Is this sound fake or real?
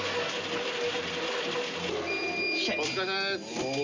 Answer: real